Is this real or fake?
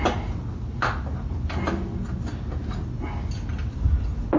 real